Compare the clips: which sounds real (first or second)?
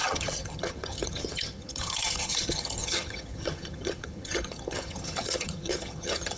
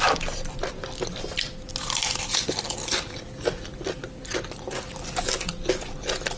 second